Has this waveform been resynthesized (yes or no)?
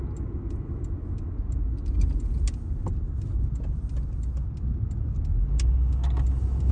no